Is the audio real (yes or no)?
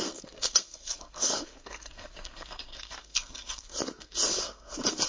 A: no